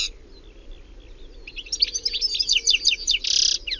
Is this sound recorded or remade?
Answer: recorded